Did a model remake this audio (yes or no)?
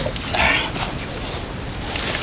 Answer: no